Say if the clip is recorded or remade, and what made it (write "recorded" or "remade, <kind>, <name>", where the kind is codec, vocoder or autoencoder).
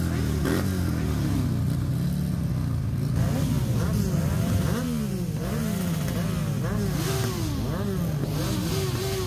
recorded